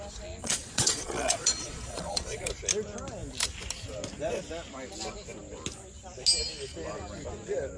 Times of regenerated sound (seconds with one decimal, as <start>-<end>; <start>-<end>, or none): 0.4-2.5